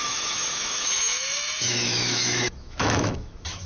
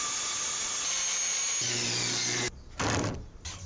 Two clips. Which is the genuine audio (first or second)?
second